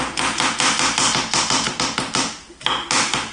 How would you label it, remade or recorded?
recorded